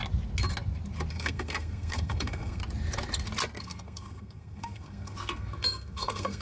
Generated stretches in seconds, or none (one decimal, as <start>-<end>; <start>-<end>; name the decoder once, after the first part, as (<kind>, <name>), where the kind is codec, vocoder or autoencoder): 1.1-2.6 (codec, SNAC); 3.6-6.4